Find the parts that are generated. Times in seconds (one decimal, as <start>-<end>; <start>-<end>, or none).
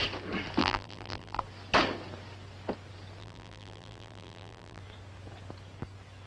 0.6-1.4; 3.2-4.8